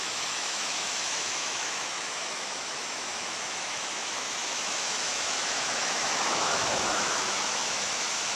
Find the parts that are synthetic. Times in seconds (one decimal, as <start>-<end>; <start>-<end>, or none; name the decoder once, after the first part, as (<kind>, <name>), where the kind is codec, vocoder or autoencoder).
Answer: 0.0-8.4 (autoencoder, DAC-VAE)

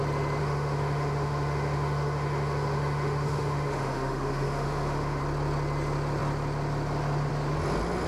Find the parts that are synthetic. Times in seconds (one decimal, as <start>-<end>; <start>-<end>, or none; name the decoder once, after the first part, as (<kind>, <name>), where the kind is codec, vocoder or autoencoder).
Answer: 0.4-5.2 (autoencoder, DAC-VAE)

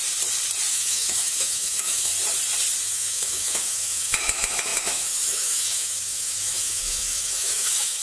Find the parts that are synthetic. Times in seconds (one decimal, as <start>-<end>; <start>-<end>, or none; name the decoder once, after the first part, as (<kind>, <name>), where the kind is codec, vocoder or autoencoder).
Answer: 0.7-2.1 (autoencoder, DAC-VAE); 2.8-8.0